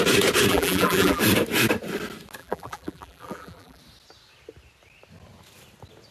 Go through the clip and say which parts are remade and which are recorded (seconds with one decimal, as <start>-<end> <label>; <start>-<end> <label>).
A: 0.0-0.5 recorded; 0.5-1.2 remade; 1.2-2.4 recorded; 2.4-3.8 remade; 3.8-6.1 recorded